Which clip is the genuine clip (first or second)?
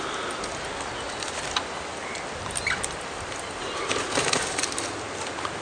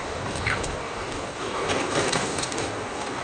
first